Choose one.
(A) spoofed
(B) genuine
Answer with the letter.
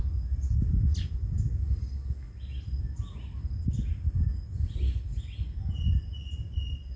B